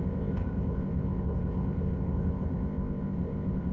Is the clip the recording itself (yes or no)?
no